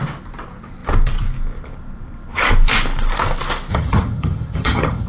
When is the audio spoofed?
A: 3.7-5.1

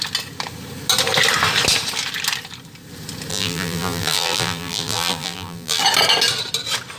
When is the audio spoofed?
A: 3.3-5.8

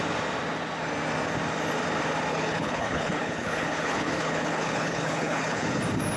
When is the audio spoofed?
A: 2.3-5.8

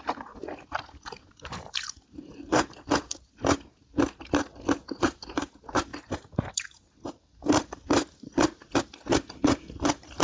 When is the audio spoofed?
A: none

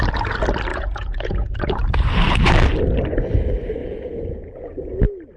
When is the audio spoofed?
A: 0.7-1.8; 3.8-5.0

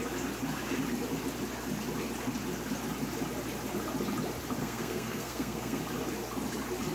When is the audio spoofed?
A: 4.6-5.8

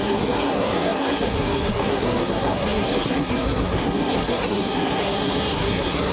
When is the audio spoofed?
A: 0.0-6.1